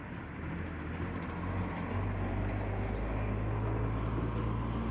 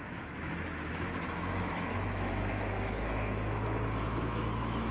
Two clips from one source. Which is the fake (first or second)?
second